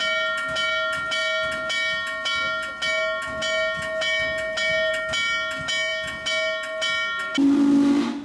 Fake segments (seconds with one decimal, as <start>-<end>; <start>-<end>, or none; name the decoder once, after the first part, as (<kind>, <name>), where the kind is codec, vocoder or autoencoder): none